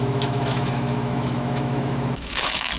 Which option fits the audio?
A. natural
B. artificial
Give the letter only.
B